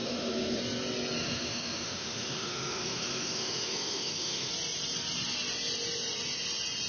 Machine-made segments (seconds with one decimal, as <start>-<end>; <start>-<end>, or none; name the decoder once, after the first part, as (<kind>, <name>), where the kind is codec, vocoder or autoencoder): 0.0-0.6 (autoencoder, DAC-VAE); 1.2-4.5